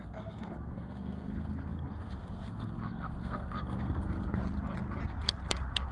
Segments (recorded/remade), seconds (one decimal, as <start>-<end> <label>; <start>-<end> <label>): 0.0-4.4 remade; 4.4-5.9 recorded